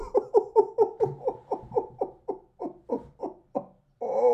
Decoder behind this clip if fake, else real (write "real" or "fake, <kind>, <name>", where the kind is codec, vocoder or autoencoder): real